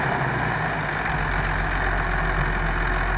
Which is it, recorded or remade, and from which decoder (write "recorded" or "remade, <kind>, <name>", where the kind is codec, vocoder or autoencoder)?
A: recorded